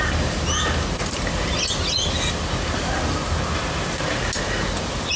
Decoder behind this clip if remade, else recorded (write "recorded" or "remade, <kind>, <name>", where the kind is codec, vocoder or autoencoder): recorded